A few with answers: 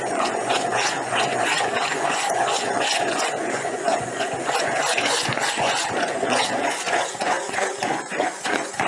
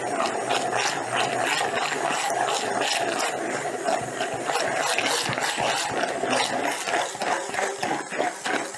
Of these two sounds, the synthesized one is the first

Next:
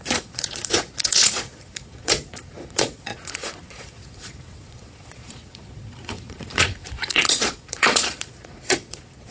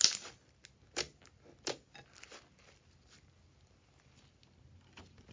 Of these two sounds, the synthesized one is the first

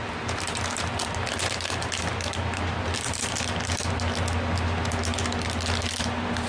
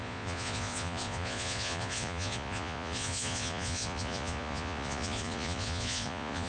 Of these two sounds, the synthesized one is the second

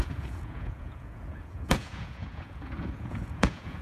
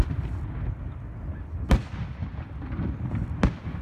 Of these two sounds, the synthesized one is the first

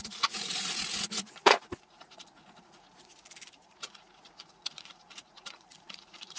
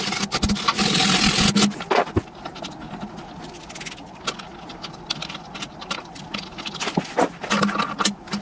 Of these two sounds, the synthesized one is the first